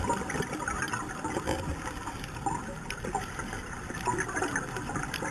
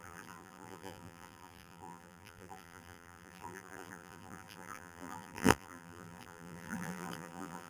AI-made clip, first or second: second